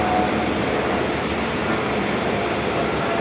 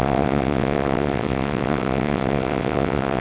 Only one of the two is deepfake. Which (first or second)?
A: second